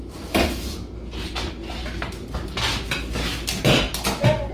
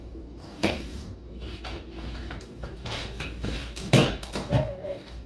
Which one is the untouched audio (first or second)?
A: first